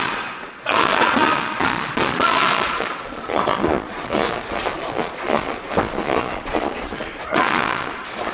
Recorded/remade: remade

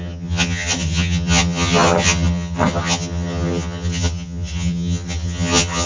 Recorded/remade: remade